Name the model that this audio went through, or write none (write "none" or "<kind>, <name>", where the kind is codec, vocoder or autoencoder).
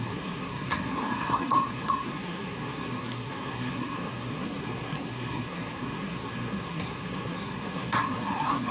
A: codec, SNAC